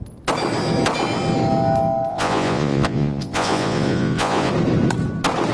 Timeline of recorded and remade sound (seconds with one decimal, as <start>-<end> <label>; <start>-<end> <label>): 0.0-2.1 recorded; 2.1-4.5 remade; 4.5-5.5 recorded